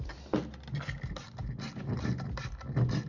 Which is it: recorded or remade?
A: recorded